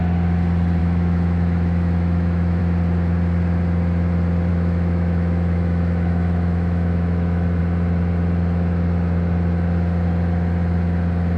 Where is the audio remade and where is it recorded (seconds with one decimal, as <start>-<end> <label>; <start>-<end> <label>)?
0.0-0.8 recorded; 0.8-2.6 remade; 2.6-4.5 recorded; 4.5-7.6 remade; 7.6-11.4 recorded